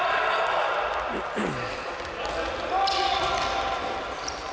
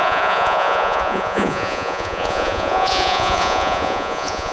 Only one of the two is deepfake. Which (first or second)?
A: second